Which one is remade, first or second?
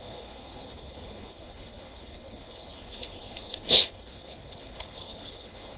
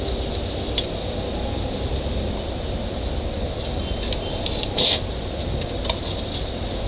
first